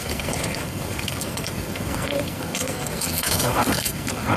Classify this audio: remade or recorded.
remade